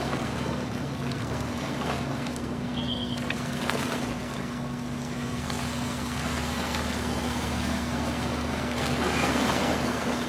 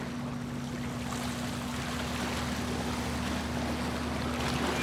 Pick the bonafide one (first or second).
second